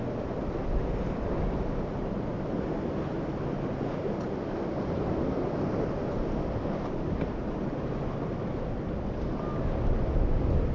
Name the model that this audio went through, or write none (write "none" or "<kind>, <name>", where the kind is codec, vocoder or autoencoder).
none